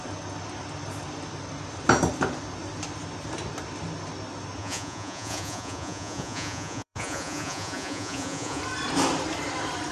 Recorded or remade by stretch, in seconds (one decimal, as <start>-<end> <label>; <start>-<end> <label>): 0.0-4.6 recorded; 4.6-8.6 remade; 8.6-9.9 recorded